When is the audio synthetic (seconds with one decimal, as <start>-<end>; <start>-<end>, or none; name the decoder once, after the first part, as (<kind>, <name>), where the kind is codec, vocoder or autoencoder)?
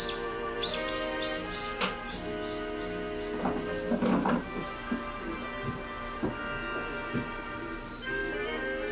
none